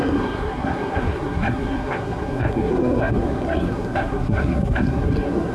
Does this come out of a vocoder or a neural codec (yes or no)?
yes